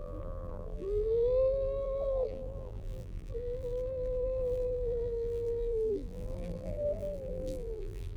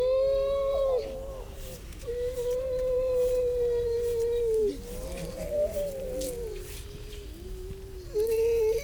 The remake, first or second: first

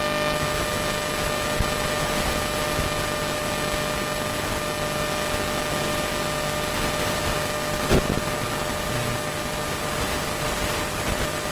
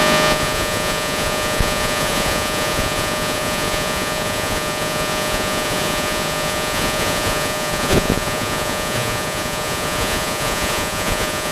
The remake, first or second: second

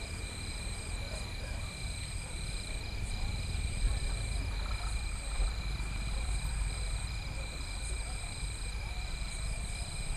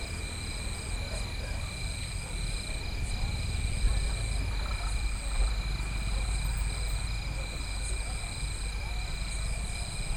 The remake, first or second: first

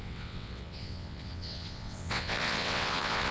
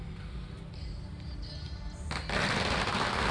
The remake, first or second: first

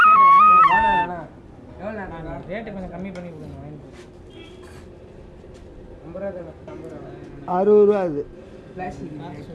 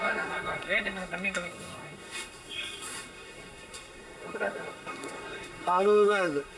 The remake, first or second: second